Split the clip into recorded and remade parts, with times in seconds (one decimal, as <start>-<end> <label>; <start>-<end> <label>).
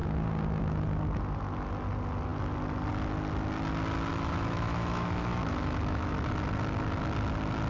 0.0-4.1 recorded; 4.1-6.3 remade; 6.3-7.7 recorded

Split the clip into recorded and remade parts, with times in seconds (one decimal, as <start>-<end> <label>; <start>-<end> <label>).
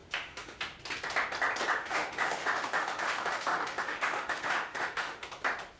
0.0-0.6 remade; 0.6-1.8 recorded; 1.8-5.3 remade; 5.3-5.8 recorded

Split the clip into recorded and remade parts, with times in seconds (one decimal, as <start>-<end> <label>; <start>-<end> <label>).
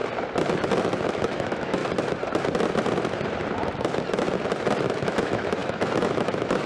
0.0-1.1 recorded; 1.1-1.8 remade; 1.8-5.0 recorded; 5.0-6.7 remade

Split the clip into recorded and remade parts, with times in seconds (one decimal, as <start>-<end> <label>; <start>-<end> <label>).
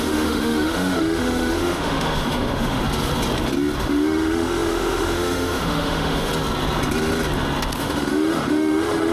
0.0-2.8 remade; 2.8-3.8 recorded; 3.8-6.3 remade; 6.3-7.8 recorded; 7.8-9.1 remade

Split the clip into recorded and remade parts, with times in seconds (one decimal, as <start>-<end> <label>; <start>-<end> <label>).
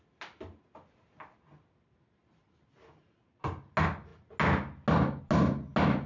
0.0-6.1 recorded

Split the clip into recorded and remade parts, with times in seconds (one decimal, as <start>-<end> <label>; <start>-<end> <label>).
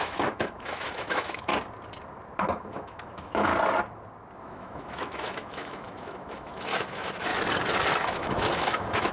0.0-1.5 remade; 1.5-2.4 recorded; 2.4-3.5 remade; 3.5-4.4 recorded; 4.4-7.3 remade; 7.3-8.1 recorded; 8.1-9.1 remade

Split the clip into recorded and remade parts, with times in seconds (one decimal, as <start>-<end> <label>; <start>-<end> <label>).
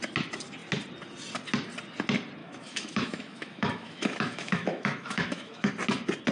0.0-2.4 recorded; 2.4-5.7 remade; 5.7-6.3 recorded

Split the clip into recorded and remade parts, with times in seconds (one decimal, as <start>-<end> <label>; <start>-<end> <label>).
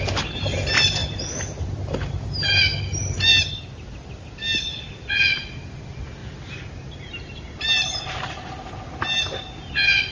0.0-10.1 recorded